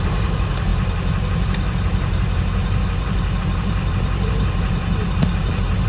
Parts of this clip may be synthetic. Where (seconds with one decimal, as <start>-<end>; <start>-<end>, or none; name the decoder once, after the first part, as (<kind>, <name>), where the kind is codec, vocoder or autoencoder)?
0.0-5.0 (vocoder, BigVGAN v2); 5.5-5.9